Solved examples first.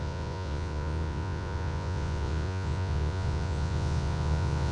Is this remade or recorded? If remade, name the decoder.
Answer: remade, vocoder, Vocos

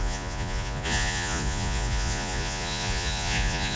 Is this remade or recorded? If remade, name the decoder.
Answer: remade, vocoder, Vocos